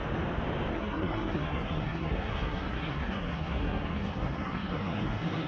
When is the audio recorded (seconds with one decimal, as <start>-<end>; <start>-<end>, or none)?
0.0-0.7